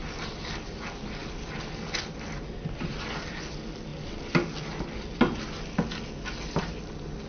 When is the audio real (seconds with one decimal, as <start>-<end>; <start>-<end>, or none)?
0.0-7.3